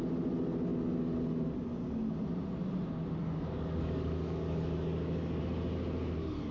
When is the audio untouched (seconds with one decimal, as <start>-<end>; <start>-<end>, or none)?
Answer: 0.0-3.2; 5.4-6.5